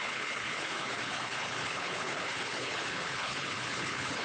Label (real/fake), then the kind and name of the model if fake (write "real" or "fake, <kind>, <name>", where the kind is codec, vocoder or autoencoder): fake, codec, HILCodec